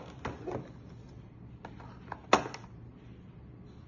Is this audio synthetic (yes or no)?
no